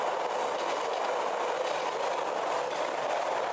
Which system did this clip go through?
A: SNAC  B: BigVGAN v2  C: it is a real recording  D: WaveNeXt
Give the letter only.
C